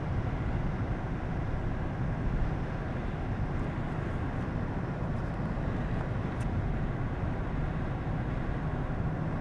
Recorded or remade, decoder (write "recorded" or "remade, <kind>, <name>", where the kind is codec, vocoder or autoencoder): recorded